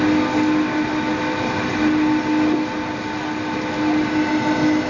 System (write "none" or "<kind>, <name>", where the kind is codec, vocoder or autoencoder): none